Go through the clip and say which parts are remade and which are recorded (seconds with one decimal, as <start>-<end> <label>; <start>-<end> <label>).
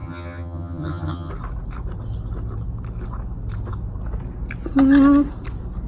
0.0-1.3 remade; 1.3-5.9 recorded